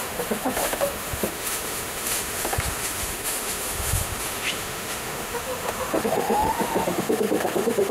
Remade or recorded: remade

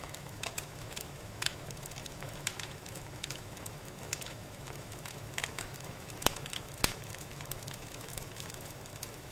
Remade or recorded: remade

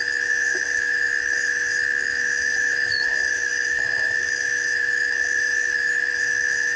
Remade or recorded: remade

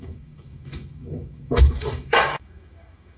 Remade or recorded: remade